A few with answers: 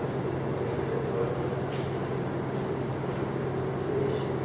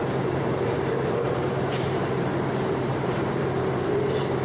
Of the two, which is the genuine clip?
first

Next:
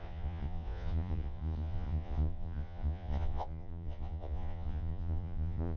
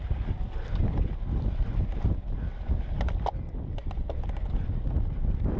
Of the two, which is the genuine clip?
second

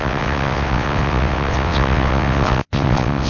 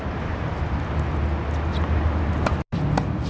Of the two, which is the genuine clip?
second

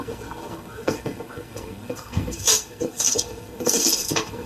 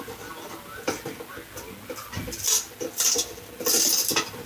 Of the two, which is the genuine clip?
second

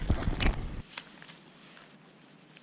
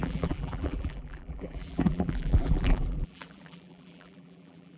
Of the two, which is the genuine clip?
first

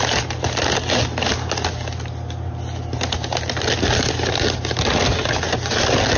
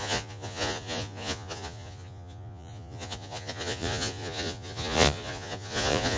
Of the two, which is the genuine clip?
first